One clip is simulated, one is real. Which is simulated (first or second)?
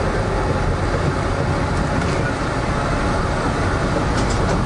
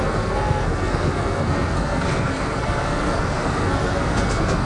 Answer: second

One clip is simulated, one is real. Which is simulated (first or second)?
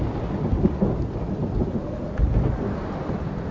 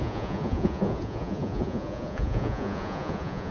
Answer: second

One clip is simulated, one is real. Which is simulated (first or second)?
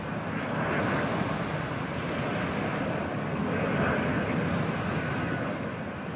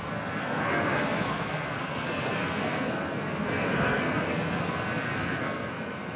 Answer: second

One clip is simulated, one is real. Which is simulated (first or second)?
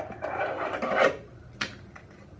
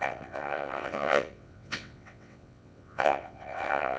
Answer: second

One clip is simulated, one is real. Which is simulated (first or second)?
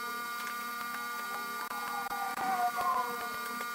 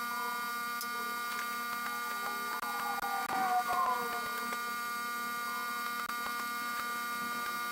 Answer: first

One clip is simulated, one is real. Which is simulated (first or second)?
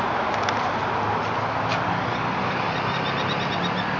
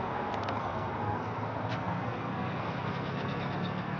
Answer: second